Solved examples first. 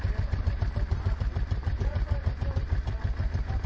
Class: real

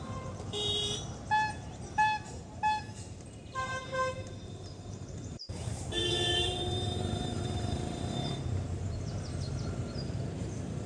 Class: fake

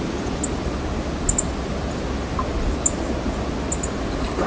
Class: real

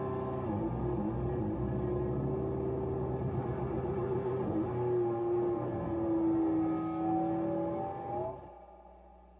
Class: real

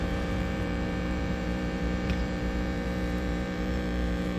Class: fake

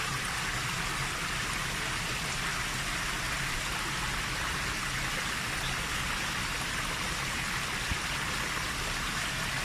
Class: real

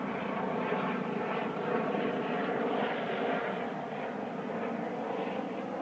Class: real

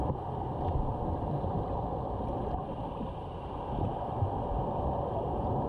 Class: real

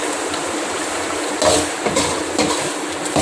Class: real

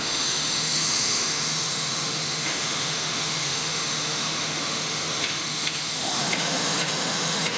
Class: fake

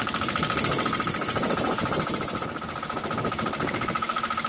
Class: real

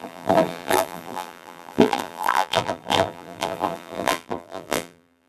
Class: fake